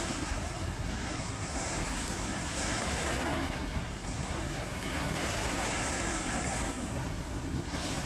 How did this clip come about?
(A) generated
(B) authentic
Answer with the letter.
A